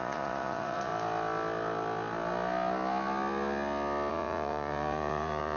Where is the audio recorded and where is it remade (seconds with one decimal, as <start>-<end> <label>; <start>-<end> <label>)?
0.0-0.9 remade; 0.9-4.1 recorded; 4.1-5.6 remade